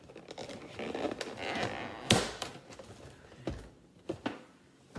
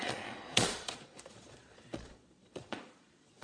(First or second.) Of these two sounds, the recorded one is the first